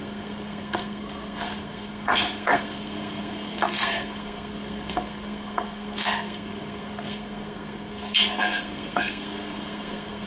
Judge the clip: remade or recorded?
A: remade